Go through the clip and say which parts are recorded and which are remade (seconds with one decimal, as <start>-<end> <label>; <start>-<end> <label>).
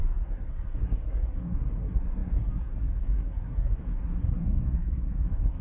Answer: 0.0-5.6 remade